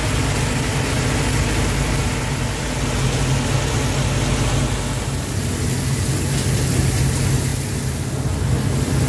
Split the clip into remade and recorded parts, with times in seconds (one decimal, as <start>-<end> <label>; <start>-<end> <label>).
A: 0.0-9.1 recorded